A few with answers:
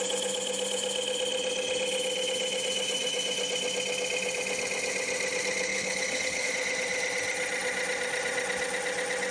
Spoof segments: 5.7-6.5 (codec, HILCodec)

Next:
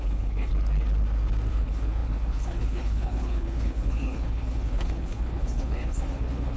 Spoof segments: 0.0-0.5 (codec, HILCodec); 1.5-6.6

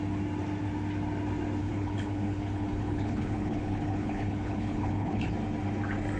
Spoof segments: 1.6-5.3 (codec, HILCodec)

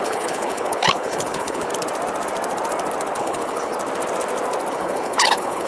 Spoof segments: 0.0-1.7 (codec, HILCodec); 3.2-3.7; 4.7-5.7

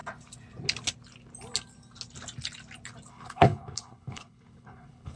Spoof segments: 3.1-5.2 (codec, HILCodec)

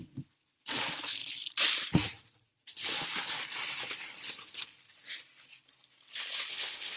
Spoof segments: 6.5-7.0 (codec, HILCodec)

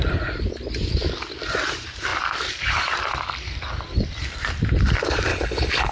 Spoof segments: 5.3-5.9 (codec, HILCodec)